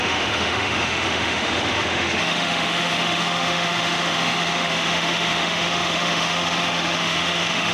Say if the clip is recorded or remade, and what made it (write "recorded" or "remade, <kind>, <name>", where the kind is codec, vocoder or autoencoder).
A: remade, autoencoder, DAC-VAE